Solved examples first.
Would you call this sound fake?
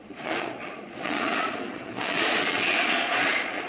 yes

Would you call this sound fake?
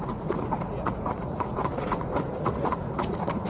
yes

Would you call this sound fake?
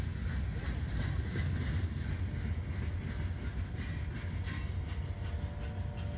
no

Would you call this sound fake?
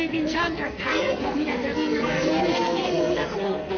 yes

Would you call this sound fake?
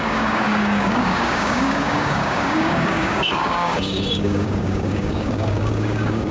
yes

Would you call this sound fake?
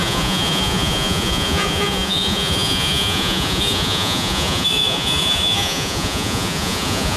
yes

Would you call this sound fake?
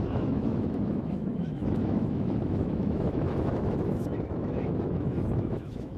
yes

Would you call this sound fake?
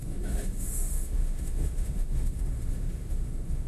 yes